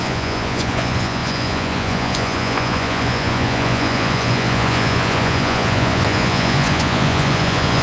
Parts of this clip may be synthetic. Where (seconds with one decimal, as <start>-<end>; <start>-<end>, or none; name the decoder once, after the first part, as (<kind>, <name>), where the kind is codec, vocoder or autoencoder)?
0.0-7.8 (vocoder, Vocos)